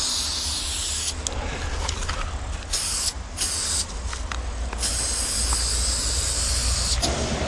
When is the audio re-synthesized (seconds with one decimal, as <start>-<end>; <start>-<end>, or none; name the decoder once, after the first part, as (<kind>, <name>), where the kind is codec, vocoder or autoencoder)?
none